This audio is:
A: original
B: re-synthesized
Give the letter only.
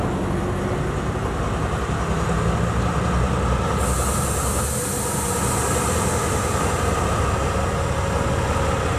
A